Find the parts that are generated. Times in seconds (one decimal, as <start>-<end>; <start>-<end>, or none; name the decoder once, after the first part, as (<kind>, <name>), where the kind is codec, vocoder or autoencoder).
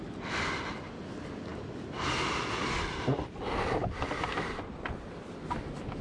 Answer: none